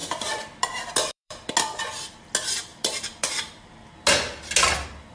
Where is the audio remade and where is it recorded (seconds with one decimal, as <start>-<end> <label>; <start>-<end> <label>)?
0.0-1.5 remade; 1.5-2.7 recorded; 2.7-3.9 remade; 3.9-5.1 recorded